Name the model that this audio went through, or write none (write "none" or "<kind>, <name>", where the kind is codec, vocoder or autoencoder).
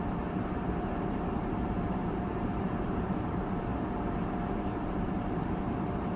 vocoder, BigVGAN v2